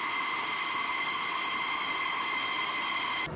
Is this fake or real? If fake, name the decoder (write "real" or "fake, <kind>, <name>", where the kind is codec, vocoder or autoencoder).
real